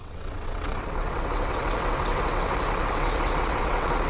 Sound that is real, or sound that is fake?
fake